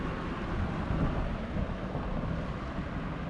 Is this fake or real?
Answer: real